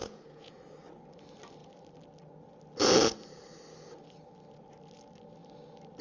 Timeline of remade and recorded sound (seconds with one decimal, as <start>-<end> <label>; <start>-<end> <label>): 0.0-0.6 remade; 0.6-6.0 recorded